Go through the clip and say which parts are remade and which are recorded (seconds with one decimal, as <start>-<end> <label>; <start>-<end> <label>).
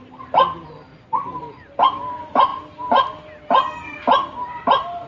0.0-5.1 recorded